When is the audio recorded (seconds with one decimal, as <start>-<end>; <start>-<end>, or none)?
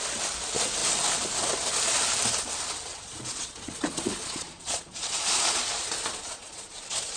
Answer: 0.0-2.9